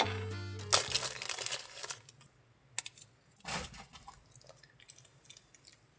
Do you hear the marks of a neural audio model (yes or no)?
no